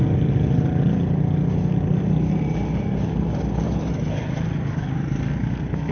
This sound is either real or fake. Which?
real